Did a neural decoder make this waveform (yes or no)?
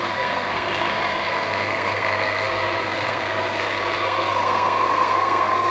yes